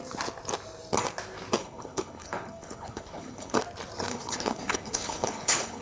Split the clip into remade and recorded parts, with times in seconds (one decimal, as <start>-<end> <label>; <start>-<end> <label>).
0.0-1.6 recorded; 1.6-3.6 remade; 3.6-4.1 recorded; 4.1-5.8 remade